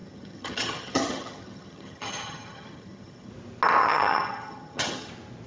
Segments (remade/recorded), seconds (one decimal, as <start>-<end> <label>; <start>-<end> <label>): 0.0-3.3 remade; 3.3-3.8 recorded; 3.8-5.1 remade; 5.1-5.5 recorded